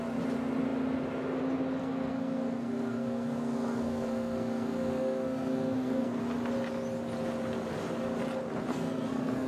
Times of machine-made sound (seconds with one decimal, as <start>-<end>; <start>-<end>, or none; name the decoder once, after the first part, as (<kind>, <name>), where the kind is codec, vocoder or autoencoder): 1.8-6.2 (codec, SNAC); 8.7-9.5